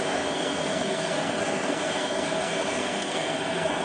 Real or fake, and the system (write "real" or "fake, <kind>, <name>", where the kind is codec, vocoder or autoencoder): fake, codec, SNAC